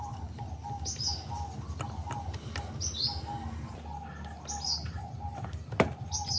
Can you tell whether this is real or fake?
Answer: real